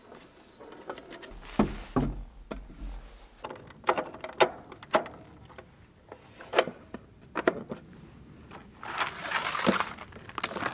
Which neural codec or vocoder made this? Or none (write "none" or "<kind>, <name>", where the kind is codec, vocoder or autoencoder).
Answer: none